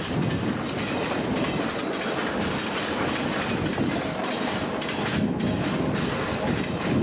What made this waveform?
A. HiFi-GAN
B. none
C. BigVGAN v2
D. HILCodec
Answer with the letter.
B